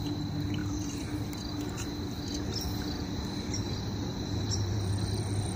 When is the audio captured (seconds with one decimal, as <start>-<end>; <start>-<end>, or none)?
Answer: 0.0-0.6; 1.2-4.0; 4.9-5.6